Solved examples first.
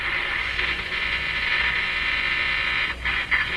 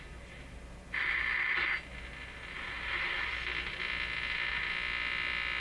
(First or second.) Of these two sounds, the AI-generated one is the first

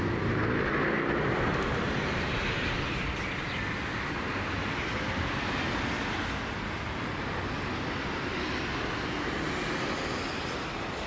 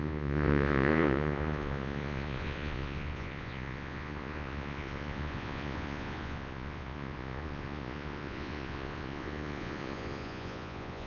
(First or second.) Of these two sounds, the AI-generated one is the second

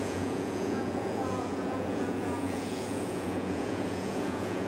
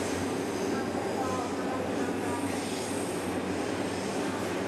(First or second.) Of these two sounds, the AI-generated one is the first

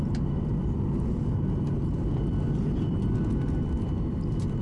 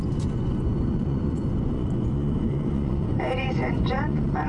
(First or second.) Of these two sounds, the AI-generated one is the second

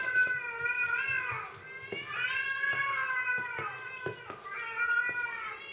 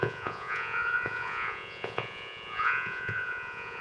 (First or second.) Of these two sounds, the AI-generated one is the second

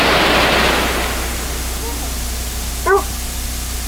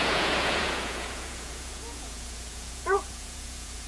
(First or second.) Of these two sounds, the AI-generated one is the second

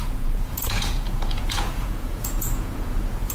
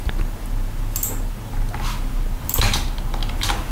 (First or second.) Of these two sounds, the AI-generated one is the first